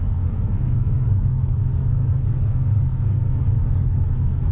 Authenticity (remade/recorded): remade